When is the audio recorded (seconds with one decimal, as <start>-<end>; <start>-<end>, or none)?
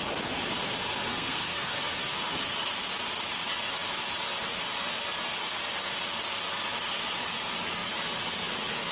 0.0-1.1; 1.7-8.9